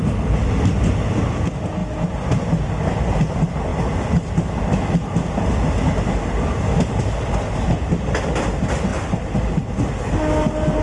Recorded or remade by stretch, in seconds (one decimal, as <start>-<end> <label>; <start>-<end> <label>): 0.0-10.8 recorded